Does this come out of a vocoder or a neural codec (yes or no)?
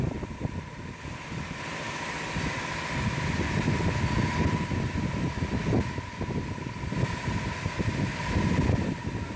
no